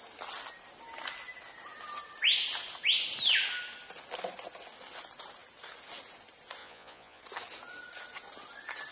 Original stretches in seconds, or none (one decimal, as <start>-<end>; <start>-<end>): 0.0-6.6; 7.2-8.9